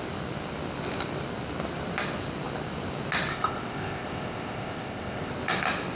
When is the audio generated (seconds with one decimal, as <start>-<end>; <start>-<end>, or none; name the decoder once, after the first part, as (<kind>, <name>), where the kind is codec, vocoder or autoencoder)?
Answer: 3.3-5.3 (codec, ZipCodec)